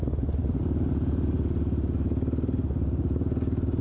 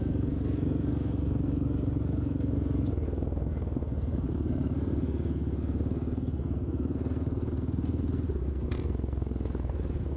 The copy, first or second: second